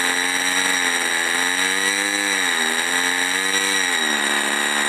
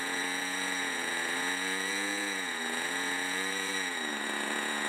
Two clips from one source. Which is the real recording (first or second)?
first